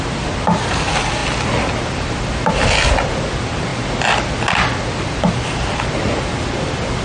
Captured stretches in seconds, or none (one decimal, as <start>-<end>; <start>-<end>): 0.0-7.0